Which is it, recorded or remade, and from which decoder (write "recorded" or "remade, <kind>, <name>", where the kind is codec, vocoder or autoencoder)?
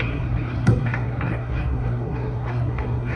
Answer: remade, codec, SNAC